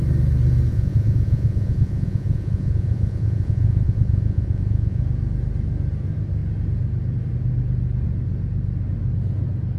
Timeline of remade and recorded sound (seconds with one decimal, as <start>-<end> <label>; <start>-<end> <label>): 0.0-0.7 recorded; 0.7-5.0 remade; 5.0-9.8 recorded